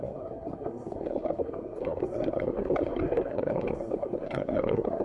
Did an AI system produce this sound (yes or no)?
yes